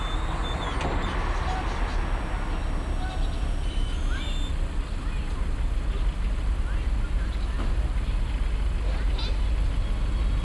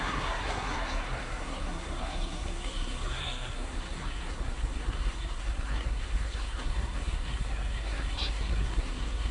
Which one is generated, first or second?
second